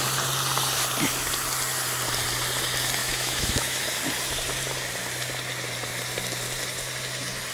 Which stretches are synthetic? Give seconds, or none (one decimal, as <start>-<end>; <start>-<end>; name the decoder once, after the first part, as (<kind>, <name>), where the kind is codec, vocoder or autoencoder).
3.0-3.8 (autoencoder, DAC-VAE)